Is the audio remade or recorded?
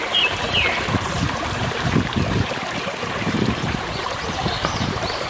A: remade